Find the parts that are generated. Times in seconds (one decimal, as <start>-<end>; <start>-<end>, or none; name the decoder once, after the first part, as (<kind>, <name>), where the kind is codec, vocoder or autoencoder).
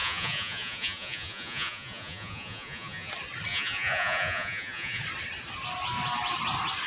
0.0-3.1 (vocoder, Vocos); 3.5-5.0